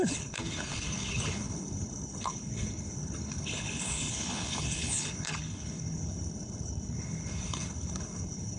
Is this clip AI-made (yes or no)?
yes